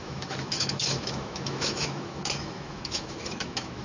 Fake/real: fake